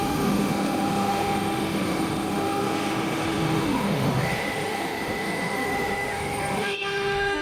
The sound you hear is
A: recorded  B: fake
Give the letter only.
B